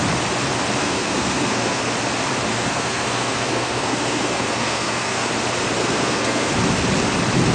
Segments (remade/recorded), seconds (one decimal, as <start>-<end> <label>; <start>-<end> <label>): 0.0-0.8 recorded; 0.8-1.8 remade; 1.8-2.5 recorded; 2.5-5.3 remade; 5.3-5.8 recorded; 5.8-6.5 remade; 6.5-7.5 recorded